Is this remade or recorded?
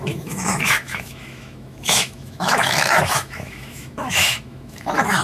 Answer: remade